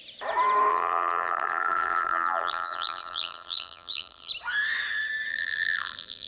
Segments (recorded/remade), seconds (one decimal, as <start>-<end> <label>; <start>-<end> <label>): 0.0-0.7 recorded; 0.7-4.3 remade; 4.3-5.3 recorded; 5.3-6.3 remade